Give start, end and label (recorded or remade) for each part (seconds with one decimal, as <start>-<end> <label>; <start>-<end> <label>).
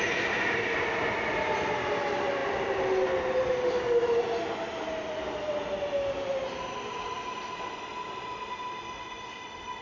0.0-9.8 recorded